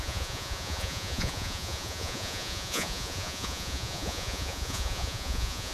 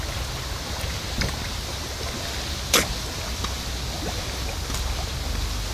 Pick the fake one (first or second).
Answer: first